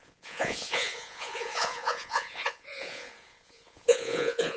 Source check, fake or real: fake